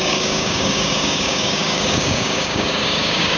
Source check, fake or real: fake